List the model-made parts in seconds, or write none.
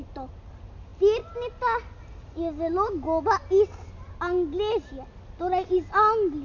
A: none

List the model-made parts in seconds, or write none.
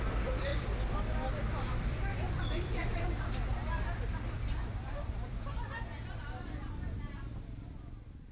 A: 0.0-2.8; 4.8-8.3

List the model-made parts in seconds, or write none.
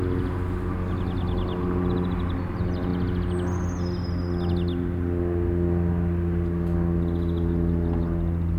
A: none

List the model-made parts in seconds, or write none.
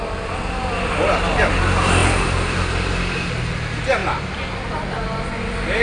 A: 2.0-2.9